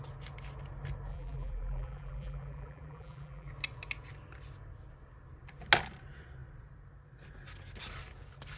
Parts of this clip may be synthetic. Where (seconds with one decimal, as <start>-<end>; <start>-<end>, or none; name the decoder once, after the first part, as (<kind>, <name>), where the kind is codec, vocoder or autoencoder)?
1.1-3.5 (vocoder, BigVGAN v2)